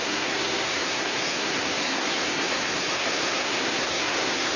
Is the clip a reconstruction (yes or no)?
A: yes